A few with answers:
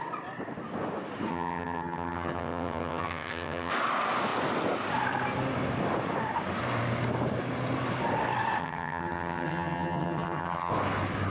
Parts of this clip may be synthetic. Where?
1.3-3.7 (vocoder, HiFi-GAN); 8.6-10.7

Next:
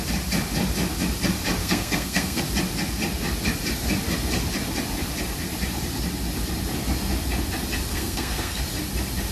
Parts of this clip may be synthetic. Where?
1.6-2.4 (codec, SNAC); 7.9-8.6

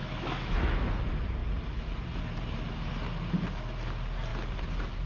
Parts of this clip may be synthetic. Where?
0.0-0.9 (autoencoder, DAC-VAE)

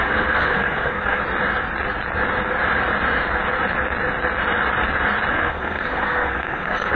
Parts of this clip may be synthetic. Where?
0.0-1.2 (codec, SNAC); 5.3-6.9